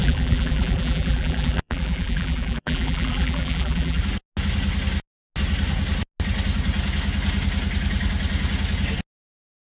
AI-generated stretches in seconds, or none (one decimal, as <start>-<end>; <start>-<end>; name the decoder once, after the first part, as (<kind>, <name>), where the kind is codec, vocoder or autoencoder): 0.0-4.0 (vocoder, BigVGAN v2)